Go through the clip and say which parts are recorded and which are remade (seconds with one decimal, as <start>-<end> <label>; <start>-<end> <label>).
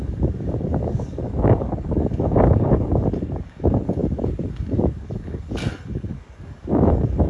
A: 0.0-7.3 remade